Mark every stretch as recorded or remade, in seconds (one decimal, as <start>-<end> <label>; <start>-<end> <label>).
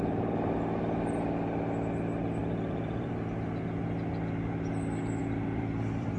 0.0-2.4 recorded; 2.4-3.1 remade; 3.1-5.2 recorded; 5.2-6.2 remade